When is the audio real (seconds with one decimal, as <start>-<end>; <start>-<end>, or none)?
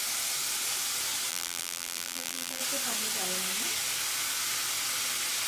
0.0-1.3; 2.6-5.5